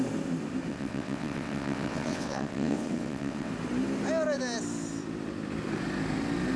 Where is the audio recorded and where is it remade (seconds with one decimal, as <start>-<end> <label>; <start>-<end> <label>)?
0.0-0.7 recorded; 0.7-3.5 remade; 3.5-6.6 recorded